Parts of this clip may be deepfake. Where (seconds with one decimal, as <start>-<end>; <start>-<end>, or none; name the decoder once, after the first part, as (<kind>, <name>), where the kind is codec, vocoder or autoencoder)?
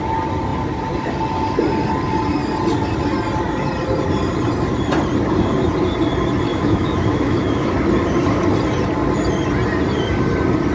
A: 6.5-7.7 (autoencoder, DAC-VAE)